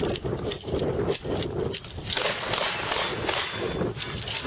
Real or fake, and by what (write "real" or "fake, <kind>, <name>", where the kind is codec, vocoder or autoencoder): real